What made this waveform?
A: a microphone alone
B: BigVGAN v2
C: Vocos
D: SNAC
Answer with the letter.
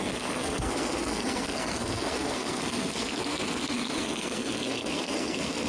D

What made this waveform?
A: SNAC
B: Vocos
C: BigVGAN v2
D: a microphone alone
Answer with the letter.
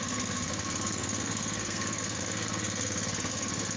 A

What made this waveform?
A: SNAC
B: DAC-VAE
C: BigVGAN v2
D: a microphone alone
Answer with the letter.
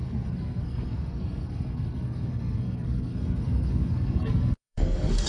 A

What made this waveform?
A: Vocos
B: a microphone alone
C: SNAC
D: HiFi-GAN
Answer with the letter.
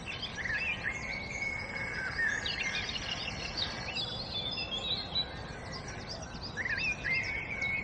B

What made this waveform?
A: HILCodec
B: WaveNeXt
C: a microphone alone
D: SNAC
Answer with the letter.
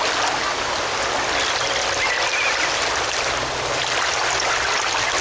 C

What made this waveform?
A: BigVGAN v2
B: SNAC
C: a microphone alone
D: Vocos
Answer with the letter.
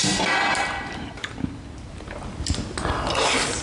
C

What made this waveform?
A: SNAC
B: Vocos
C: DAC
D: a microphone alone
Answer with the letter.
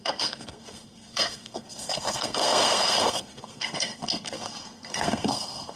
A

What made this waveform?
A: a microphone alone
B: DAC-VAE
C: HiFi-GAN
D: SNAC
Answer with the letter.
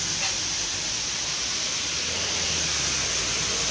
A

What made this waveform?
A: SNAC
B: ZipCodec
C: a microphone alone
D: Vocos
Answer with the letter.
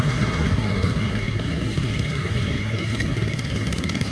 A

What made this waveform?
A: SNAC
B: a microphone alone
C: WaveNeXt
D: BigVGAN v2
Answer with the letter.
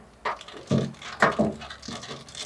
B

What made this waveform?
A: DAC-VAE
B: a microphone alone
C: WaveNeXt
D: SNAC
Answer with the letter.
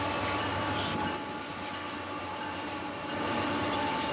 B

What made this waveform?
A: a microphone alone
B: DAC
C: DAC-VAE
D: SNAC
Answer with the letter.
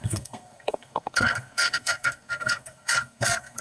D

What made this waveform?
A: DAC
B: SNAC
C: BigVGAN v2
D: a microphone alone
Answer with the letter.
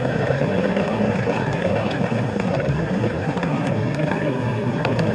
B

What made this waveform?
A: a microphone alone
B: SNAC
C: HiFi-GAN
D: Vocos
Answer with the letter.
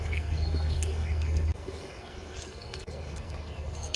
B